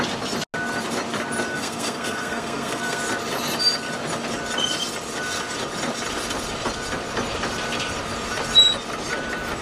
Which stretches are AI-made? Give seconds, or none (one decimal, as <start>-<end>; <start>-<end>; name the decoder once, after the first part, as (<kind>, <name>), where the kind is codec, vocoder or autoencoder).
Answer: 1.5-3.0 (codec, SNAC)